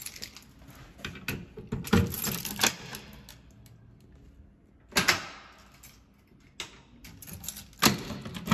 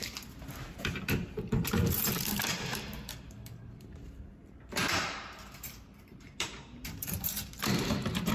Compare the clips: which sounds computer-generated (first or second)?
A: second